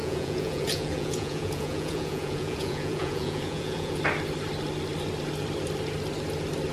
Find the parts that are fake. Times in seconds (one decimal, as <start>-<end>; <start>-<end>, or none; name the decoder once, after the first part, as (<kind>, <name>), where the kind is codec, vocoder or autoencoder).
0.0-4.0 (vocoder, Vocos)